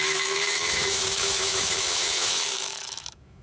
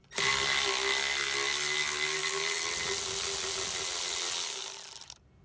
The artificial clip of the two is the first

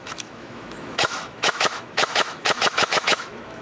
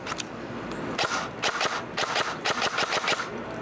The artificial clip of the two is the first